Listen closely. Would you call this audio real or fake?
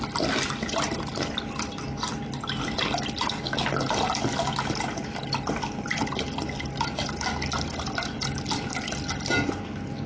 real